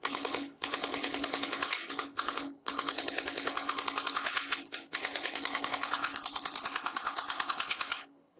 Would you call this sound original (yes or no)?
no